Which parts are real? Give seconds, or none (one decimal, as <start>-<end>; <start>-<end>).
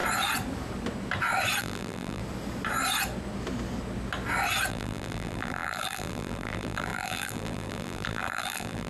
0.0-1.6; 2.2-4.7